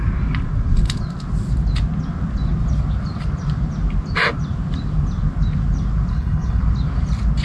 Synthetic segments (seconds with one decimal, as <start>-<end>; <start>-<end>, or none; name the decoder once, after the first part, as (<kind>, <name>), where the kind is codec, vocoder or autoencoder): 6.1-6.6 (codec, HILCodec)